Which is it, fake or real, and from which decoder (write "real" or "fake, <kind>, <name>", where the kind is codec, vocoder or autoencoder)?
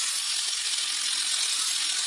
real